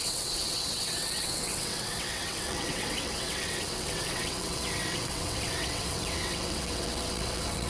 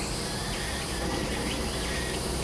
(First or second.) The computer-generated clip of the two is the first